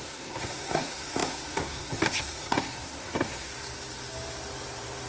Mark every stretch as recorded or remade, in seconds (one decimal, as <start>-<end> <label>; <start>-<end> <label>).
0.0-3.5 remade; 3.5-5.1 recorded